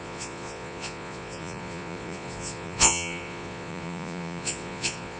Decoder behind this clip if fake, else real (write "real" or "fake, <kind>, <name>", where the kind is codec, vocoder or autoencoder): fake, vocoder, Vocos